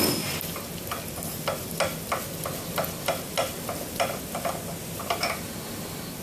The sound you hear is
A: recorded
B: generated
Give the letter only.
A